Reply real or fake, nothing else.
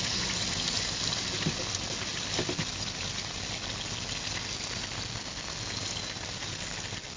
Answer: real